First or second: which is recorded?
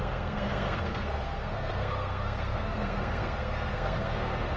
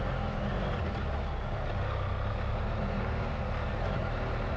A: second